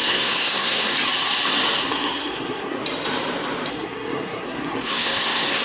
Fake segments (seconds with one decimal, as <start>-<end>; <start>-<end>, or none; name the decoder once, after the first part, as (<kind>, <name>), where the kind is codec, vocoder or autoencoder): 0.0-0.9 (codec, SNAC); 1.8-2.8; 3.7-5.6